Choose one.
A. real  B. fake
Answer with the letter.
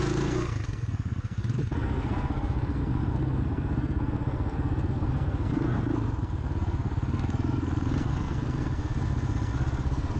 B